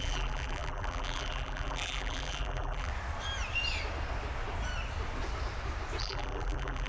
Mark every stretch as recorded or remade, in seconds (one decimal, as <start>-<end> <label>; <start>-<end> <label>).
0.0-2.9 remade; 2.9-6.0 recorded; 6.0-6.9 remade